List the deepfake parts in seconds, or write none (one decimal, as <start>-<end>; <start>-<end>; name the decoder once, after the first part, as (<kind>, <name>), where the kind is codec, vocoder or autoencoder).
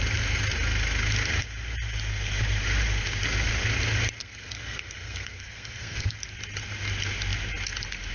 4.2-6.2 (codec, SNAC)